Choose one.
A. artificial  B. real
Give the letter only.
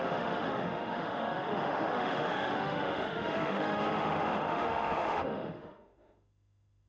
A